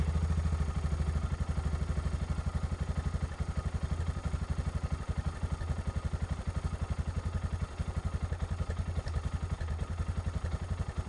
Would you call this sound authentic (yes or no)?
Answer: yes